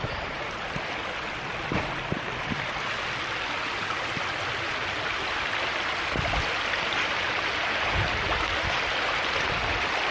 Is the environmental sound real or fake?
real